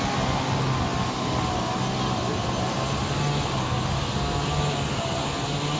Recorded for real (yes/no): yes